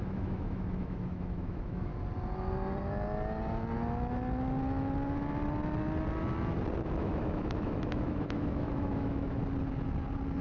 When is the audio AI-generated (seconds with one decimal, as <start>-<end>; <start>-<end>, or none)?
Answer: 0.0-1.9; 6.8-9.4